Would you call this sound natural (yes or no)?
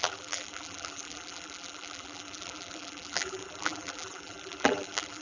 no